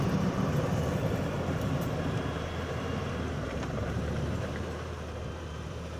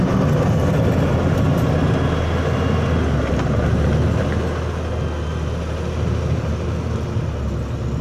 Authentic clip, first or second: second